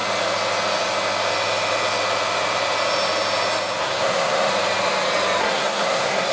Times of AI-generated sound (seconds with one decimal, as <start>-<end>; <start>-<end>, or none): 3.8-4.5; 5.4-6.3